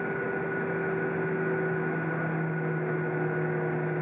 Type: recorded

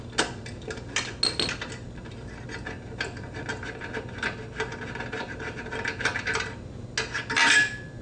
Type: recorded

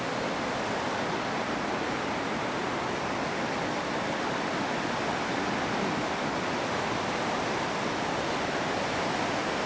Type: recorded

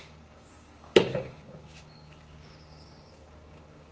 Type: remade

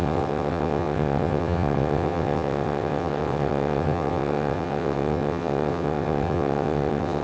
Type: remade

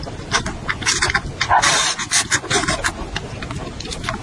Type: recorded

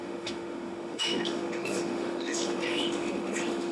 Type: remade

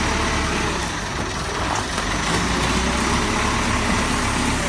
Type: recorded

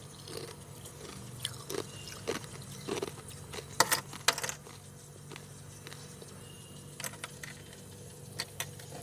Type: recorded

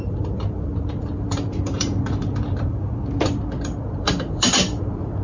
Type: remade